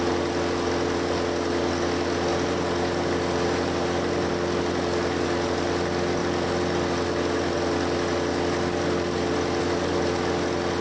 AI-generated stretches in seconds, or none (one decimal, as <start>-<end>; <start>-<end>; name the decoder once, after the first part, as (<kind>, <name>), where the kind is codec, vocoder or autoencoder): none